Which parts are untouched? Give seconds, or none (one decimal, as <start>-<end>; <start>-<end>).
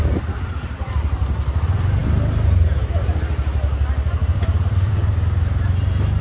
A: 1.1-4.2; 5.1-6.2